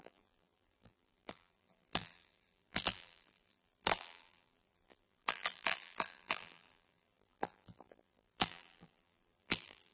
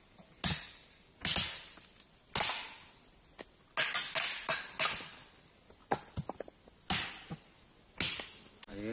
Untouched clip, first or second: second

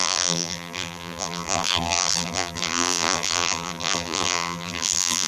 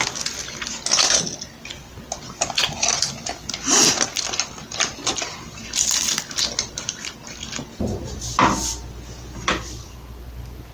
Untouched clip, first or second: second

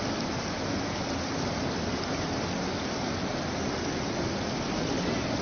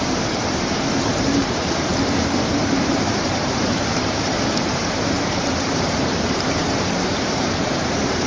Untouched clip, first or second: first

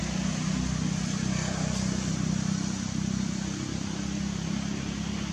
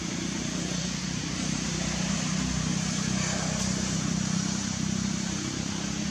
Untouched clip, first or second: first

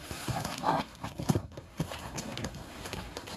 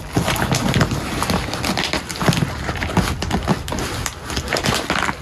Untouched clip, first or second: second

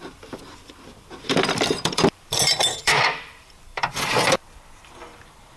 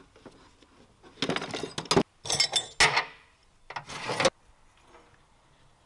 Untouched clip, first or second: second